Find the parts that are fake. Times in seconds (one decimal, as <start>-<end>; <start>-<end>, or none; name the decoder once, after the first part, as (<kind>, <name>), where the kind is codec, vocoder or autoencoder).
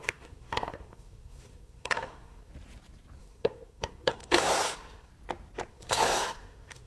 0.0-2.5 (codec, SNAC); 3.2-5.1; 5.7-6.9